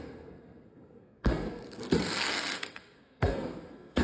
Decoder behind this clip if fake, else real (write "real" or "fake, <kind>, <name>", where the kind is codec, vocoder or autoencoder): fake, codec, SNAC